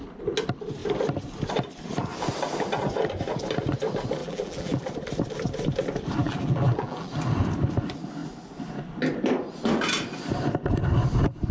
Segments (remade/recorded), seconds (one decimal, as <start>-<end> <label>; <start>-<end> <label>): 0.0-4.2 recorded; 4.2-4.8 remade; 4.8-6.2 recorded; 6.2-7.1 remade; 7.1-11.5 recorded

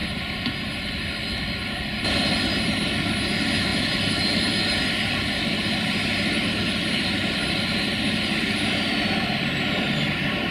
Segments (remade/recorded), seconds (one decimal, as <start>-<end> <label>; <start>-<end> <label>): 0.0-10.5 recorded

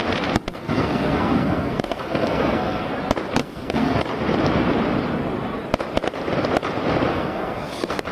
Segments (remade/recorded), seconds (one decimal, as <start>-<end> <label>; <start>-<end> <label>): 0.0-0.5 recorded; 0.5-2.9 remade; 2.9-3.4 recorded; 3.4-4.0 remade; 4.0-7.1 recorded; 7.1-8.1 remade

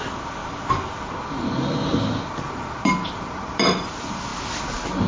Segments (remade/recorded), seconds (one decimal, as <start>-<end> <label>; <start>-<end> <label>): 0.0-5.1 recorded

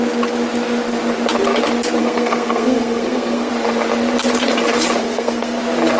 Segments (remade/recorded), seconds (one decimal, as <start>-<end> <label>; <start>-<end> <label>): 0.0-2.0 recorded; 2.0-3.5 remade; 3.5-5.0 recorded; 5.0-5.6 remade; 5.6-6.0 recorded

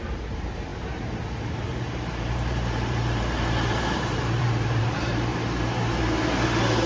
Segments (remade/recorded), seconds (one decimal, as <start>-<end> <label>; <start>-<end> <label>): 0.0-5.3 remade; 5.3-6.9 recorded

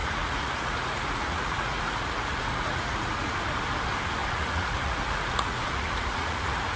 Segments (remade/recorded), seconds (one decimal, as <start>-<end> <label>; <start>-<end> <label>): 0.0-3.4 remade; 3.4-4.2 recorded; 4.2-6.8 remade